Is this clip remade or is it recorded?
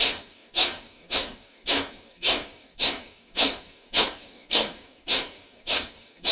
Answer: remade